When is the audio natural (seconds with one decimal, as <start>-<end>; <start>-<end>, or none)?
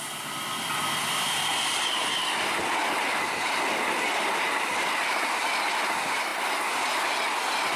0.0-7.8